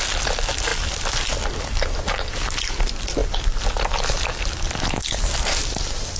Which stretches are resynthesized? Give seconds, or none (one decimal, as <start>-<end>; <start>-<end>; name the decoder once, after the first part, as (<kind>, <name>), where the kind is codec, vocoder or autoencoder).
none

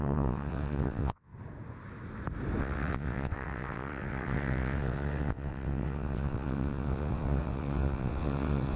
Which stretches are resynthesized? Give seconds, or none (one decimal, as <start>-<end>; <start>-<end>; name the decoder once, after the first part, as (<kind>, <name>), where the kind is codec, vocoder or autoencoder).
0.0-1.3 (vocoder, WaveNeXt); 2.6-8.8

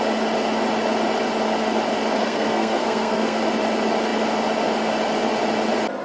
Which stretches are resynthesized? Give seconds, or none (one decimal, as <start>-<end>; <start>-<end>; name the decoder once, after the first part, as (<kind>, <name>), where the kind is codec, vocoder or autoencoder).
2.2-3.4 (codec, SNAC)

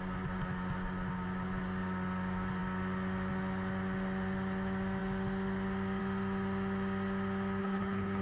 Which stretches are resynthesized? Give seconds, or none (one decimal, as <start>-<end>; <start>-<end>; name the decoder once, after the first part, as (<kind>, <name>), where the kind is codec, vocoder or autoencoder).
7.6-8.2 (codec, HILCodec)

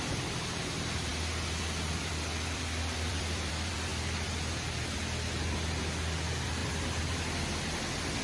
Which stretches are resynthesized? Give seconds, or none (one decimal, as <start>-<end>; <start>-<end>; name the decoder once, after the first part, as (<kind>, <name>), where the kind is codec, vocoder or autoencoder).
0.0-1.1 (vocoder, BigVGAN v2); 2.1-3.9; 5.8-6.6

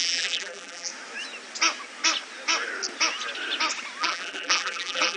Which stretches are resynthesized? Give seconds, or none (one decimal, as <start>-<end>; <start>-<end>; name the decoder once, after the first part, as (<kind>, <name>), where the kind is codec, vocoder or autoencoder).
0.0-0.9 (vocoder, BigVGAN v2); 4.0-5.2